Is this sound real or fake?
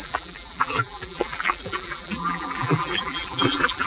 fake